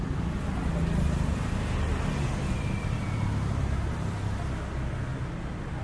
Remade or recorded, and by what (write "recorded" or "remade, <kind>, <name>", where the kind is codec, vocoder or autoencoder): recorded